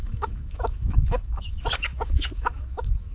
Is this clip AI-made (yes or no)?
yes